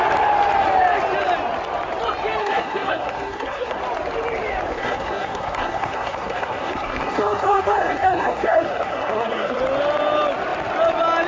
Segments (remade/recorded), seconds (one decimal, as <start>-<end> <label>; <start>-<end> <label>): 0.0-2.4 recorded; 2.4-3.8 remade; 3.8-4.7 recorded; 4.7-9.6 remade; 9.6-11.3 recorded